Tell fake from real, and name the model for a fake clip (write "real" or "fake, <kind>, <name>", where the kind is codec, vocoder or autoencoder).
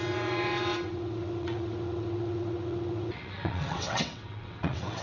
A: fake, vocoder, WaveNeXt